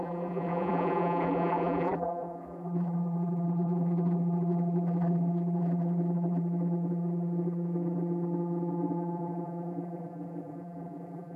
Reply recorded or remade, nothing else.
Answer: remade